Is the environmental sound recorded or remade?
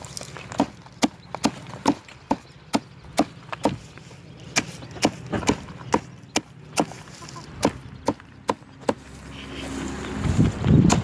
recorded